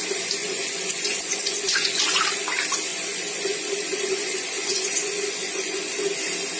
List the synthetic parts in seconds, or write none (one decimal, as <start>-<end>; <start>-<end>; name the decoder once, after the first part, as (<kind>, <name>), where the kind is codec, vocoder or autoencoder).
0.4-2.2 (vocoder, Vocos); 2.9-6.0